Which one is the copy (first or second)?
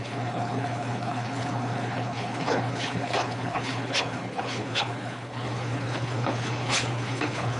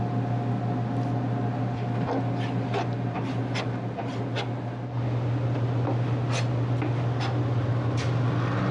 first